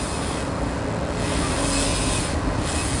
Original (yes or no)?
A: yes